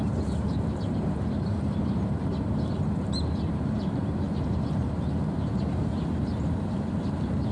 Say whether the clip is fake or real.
fake